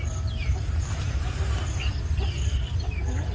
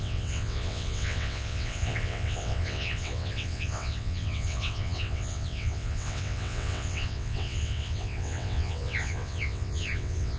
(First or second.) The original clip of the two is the first